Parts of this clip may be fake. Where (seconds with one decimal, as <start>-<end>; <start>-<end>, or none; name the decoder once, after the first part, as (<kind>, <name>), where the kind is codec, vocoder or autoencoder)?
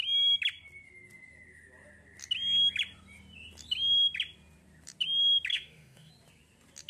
5.5-6.1 (autoencoder, DAC-VAE)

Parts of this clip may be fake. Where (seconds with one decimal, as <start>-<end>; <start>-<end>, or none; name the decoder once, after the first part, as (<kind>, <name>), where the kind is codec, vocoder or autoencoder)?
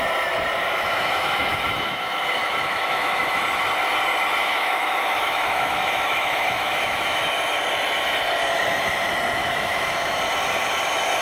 0.6-3.4 (autoencoder, DAC-VAE); 4.4-7.2; 9.4-10.2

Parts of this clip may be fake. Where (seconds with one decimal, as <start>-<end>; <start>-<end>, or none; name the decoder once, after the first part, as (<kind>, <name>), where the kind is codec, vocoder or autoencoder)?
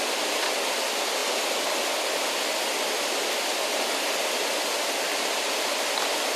none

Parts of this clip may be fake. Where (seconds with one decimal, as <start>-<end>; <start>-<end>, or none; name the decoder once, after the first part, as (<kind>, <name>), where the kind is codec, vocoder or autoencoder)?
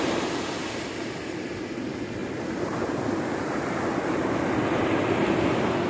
none